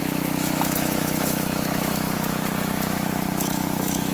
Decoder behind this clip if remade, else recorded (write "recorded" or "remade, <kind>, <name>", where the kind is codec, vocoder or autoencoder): remade, autoencoder, DAC-VAE